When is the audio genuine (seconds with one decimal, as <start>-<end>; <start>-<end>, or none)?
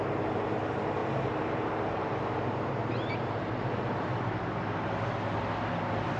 0.0-1.0; 3.4-6.2